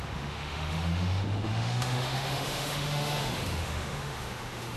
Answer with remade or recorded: remade